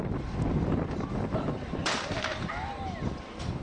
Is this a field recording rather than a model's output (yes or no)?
no